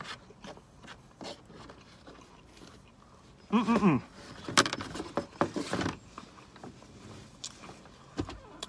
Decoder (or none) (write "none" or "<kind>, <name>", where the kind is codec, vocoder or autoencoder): none